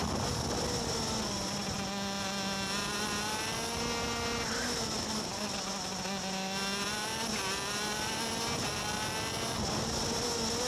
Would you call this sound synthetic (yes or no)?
no